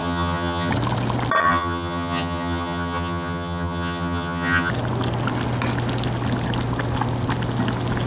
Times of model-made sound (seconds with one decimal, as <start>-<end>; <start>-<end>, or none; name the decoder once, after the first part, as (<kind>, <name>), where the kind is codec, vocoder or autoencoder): 0.0-0.7 (vocoder, HiFi-GAN); 1.4-4.7